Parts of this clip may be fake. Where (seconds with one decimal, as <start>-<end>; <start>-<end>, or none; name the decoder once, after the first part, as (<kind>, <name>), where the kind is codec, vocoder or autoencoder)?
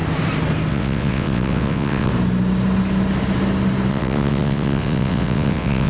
0.7-2.1 (vocoder, WaveNeXt); 3.9-5.9